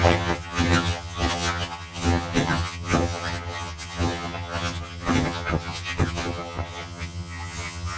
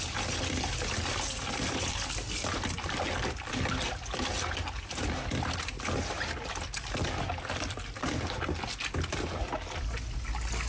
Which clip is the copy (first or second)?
first